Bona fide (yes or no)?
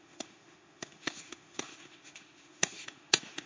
no